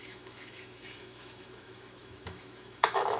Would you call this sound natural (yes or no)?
no